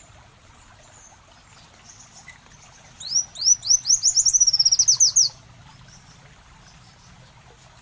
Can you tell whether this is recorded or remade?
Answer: recorded